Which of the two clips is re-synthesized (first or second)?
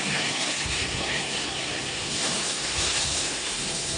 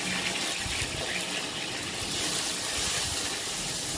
first